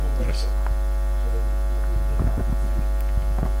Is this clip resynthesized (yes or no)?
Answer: no